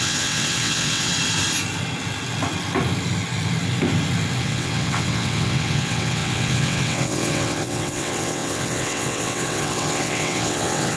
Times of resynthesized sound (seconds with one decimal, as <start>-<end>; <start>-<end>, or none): 0.0-1.1; 4.4-11.0